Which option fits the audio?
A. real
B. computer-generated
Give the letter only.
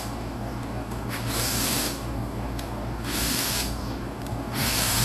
B